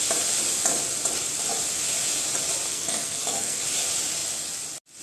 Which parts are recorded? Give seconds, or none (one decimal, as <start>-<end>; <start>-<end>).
0.0-2.7; 3.6-5.0